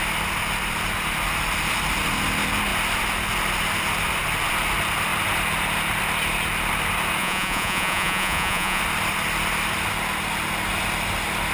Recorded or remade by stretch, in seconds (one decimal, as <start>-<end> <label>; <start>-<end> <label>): 0.0-7.2 recorded; 7.2-8.8 remade; 8.8-11.5 recorded